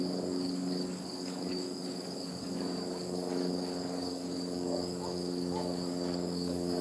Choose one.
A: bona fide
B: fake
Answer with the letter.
B